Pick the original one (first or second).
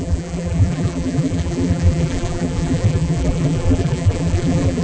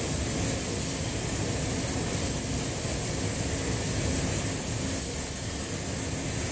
second